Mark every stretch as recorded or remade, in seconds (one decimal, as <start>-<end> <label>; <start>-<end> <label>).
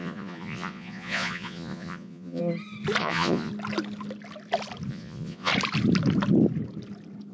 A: 0.0-2.4 remade; 2.4-3.0 recorded; 3.0-3.5 remade; 3.5-4.9 recorded; 4.9-5.5 remade; 5.5-7.3 recorded